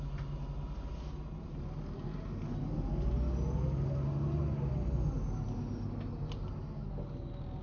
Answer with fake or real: real